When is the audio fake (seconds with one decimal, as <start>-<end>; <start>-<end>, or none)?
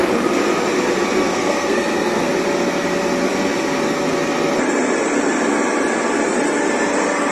1.3-2.3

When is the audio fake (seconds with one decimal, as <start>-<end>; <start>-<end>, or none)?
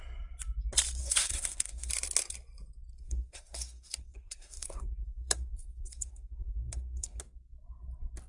1.0-1.9; 2.9-7.2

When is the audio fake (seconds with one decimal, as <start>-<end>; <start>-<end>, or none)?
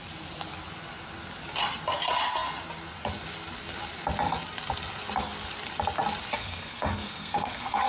6.4-7.9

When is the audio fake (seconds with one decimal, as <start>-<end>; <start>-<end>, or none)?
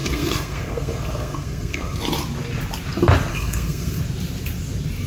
0.0-2.0; 3.3-4.0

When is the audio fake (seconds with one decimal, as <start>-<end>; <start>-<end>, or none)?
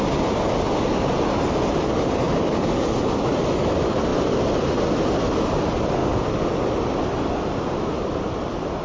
none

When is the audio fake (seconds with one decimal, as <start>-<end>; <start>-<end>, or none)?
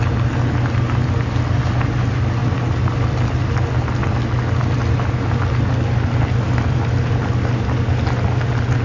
none